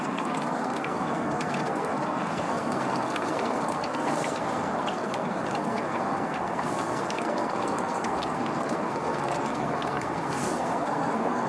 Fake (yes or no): yes